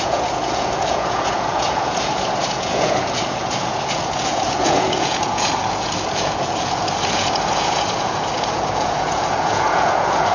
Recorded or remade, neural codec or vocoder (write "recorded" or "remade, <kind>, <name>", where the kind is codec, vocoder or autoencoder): remade, vocoder, Vocos